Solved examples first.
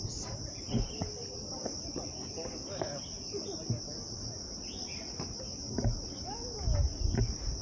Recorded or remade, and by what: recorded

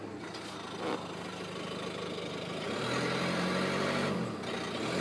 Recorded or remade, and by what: recorded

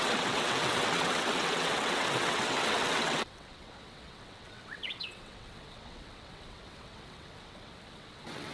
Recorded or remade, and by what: remade, vocoder, WaveNeXt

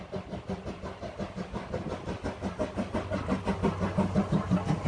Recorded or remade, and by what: recorded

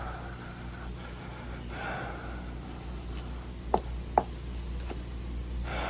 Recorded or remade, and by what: recorded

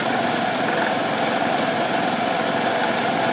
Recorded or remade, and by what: recorded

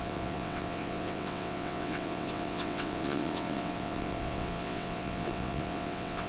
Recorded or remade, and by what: remade, vocoder, WaveNeXt